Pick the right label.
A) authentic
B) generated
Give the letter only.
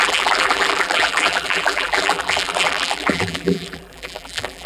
B